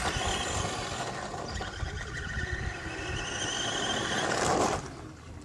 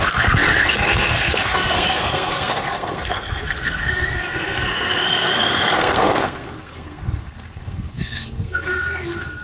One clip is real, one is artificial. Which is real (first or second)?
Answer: first